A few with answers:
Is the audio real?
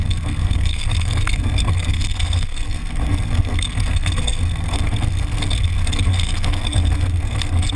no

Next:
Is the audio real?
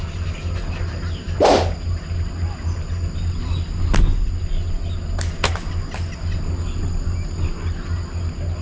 yes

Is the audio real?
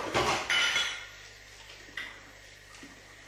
yes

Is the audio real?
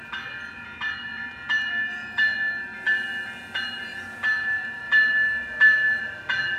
yes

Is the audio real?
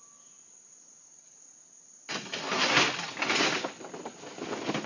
yes